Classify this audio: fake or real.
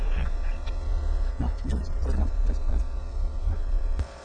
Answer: fake